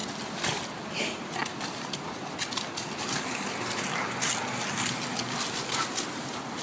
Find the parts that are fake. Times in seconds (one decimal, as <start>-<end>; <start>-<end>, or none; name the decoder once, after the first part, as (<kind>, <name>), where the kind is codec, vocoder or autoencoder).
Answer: none